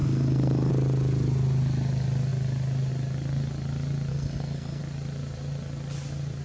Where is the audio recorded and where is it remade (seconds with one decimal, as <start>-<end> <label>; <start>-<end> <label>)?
0.0-0.7 remade; 0.7-4.1 recorded; 4.1-4.8 remade; 4.8-6.4 recorded